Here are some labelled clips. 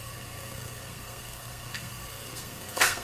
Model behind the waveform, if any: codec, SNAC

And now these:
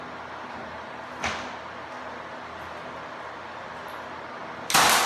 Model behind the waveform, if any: none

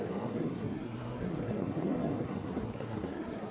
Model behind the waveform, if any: codec, SNAC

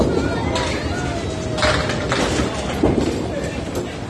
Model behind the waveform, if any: none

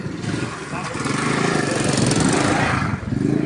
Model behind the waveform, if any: none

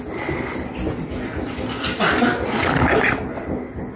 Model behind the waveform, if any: none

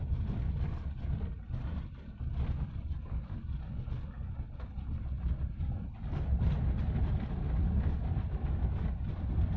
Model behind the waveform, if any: none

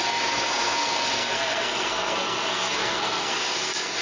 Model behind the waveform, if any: codec, SNAC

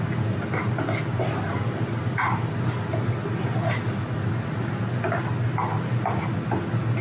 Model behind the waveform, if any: none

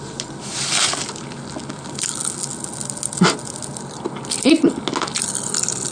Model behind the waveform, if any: none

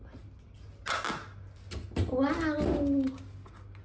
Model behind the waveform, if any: none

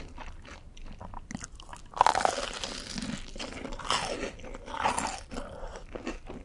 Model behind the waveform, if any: none